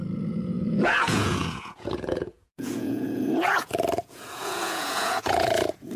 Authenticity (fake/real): fake